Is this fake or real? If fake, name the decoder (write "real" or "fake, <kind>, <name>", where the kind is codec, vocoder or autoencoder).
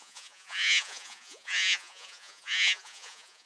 fake, vocoder, Vocos